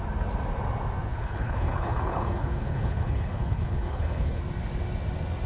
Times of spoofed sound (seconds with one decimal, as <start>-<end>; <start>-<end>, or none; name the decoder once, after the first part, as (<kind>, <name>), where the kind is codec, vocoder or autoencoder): 1.1-4.4 (codec, HILCodec)